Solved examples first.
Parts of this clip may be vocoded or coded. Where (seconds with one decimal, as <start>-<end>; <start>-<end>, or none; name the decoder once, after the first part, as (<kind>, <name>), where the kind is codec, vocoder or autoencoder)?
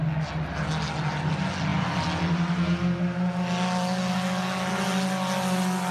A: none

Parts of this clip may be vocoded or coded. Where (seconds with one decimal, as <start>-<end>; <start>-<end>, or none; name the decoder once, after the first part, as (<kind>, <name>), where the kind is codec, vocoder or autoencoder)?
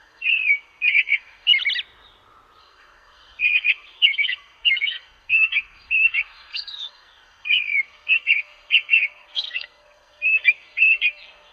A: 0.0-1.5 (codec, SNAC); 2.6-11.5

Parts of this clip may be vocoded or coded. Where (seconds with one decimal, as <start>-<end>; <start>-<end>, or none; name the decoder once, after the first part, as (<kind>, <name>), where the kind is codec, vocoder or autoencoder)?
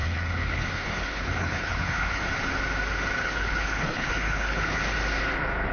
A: 0.0-2.2 (codec, HILCodec); 3.2-4.8